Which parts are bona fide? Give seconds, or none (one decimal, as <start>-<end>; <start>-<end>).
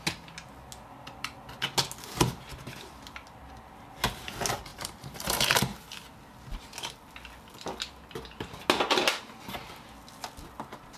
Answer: 0.0-4.7; 5.6-11.0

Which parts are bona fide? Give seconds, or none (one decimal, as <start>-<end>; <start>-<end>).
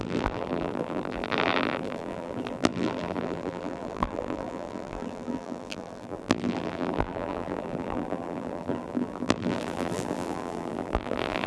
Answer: none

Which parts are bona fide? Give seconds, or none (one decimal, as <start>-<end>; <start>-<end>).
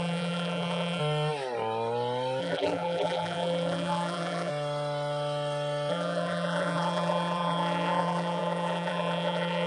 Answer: 1.0-2.4; 4.5-5.9